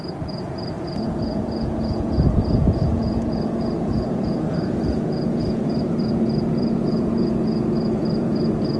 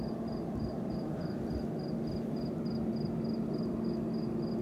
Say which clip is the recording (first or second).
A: second